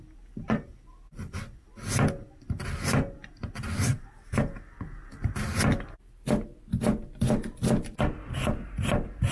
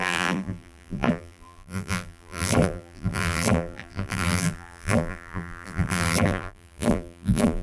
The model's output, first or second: second